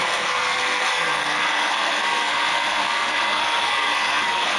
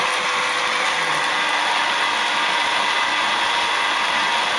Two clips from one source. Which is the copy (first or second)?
first